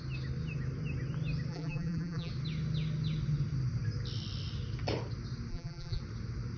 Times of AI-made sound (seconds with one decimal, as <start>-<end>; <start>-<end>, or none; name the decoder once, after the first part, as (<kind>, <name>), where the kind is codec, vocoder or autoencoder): 1.5-2.3 (vocoder, BigVGAN v2); 5.5-6.0